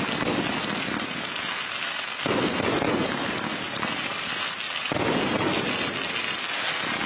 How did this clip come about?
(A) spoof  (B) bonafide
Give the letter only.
B